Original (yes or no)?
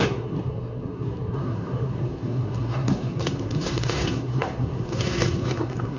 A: no